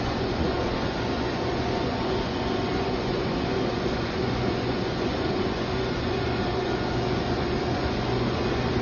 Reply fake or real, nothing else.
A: fake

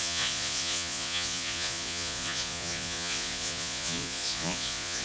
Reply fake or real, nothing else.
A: fake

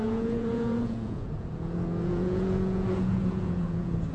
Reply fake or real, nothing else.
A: fake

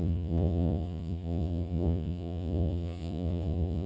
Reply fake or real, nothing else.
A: fake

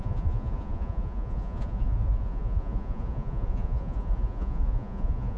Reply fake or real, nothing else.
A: fake